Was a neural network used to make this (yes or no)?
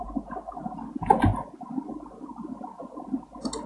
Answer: no